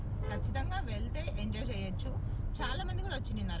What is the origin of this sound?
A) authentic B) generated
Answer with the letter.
A